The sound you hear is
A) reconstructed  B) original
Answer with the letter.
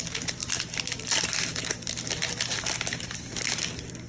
B